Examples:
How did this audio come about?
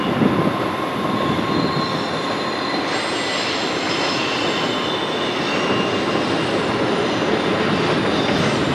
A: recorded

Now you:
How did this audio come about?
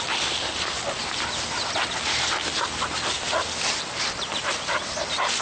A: recorded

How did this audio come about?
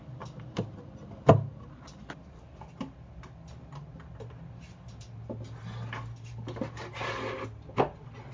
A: recorded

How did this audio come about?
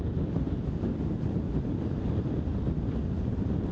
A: recorded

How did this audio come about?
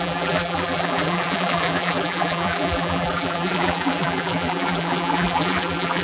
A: remade